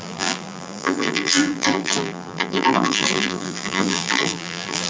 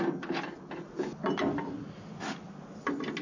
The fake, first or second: first